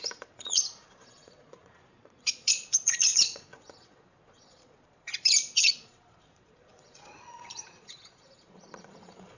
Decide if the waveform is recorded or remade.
remade